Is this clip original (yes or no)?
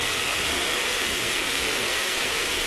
no